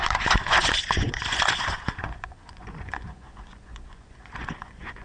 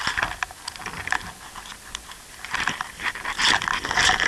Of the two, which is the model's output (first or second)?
first